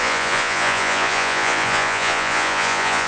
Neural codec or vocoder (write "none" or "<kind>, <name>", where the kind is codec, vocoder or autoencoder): vocoder, Vocos